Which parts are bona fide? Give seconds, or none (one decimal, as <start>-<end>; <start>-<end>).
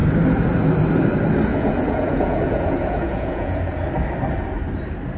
0.0-1.5; 3.7-5.2